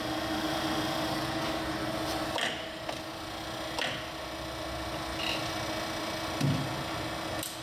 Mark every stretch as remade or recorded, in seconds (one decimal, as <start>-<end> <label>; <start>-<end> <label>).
0.0-7.6 recorded